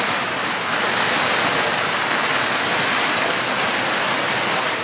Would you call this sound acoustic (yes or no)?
yes